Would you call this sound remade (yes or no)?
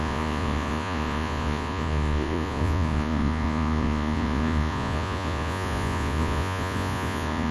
yes